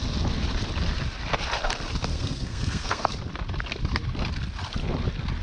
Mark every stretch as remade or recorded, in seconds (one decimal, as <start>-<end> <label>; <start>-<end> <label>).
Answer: 0.0-2.1 recorded; 2.1-3.1 remade; 3.1-5.4 recorded